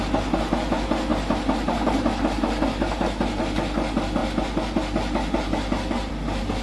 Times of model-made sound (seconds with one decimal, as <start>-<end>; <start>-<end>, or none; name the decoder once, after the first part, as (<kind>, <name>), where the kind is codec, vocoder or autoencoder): none